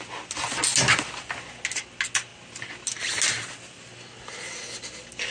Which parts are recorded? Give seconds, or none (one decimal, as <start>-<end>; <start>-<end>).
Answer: 0.0-5.3